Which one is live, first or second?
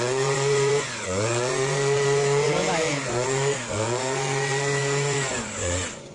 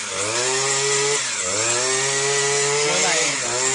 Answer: second